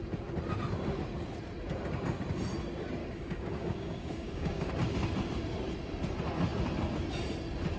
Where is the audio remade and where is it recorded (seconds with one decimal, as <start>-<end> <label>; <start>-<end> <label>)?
0.0-3.0 recorded; 3.0-4.7 remade; 4.7-7.8 recorded